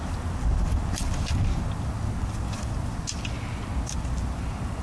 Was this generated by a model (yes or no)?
no